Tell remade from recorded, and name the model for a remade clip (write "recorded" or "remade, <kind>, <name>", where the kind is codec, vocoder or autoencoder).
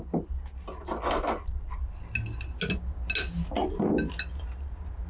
recorded